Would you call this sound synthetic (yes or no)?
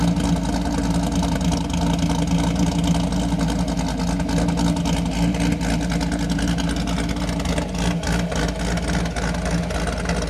no